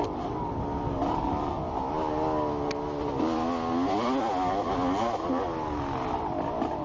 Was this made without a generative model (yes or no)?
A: yes